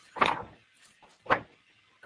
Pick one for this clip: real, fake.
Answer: real